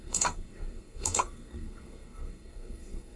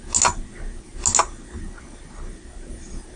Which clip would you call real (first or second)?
second